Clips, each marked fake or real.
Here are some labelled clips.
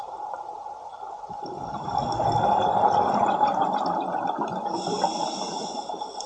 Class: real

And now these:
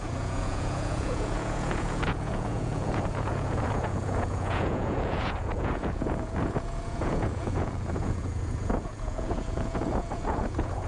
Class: fake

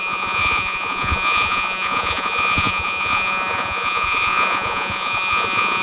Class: fake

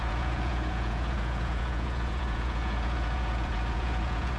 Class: fake